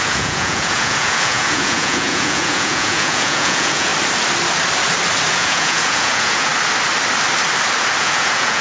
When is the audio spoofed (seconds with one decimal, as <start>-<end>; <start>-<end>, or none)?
0.0-3.9; 5.3-6.5; 8.0-8.6

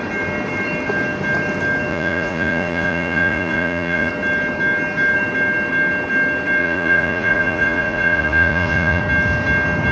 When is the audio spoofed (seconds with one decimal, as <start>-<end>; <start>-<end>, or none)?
1.9-4.1; 6.6-9.0

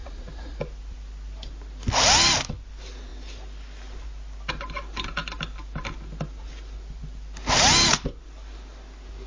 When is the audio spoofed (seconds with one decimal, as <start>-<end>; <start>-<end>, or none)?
0.0-0.6

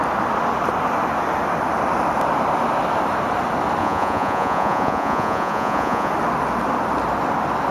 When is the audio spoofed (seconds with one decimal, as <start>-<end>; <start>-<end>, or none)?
3.8-6.1

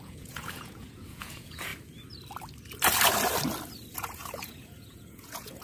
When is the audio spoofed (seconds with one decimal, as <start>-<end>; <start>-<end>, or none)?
0.0-1.7; 3.9-5.6